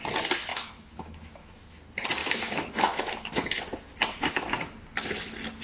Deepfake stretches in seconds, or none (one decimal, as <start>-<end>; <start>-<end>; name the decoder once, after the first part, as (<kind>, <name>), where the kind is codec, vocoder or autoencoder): 0.5-1.8 (autoencoder, DAC-VAE); 2.2-3.0